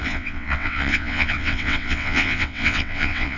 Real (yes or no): no